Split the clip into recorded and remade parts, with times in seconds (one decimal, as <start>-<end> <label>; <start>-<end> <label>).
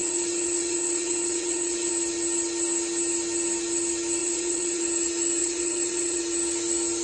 0.0-1.9 remade; 1.9-4.2 recorded; 4.2-4.8 remade; 4.8-5.4 recorded; 5.4-6.2 remade; 6.2-7.0 recorded